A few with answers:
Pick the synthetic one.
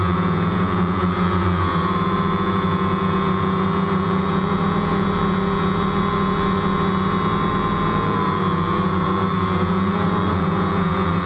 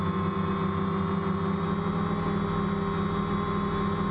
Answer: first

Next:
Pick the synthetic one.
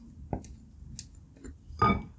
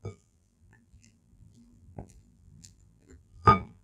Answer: second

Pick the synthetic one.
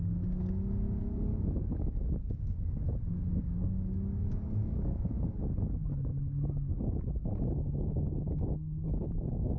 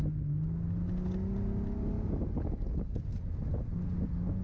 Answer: first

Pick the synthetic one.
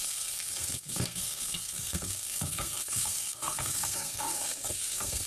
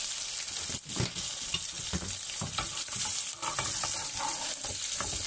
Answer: first